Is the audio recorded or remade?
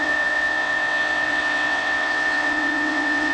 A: remade